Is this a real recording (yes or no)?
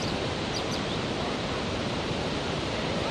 no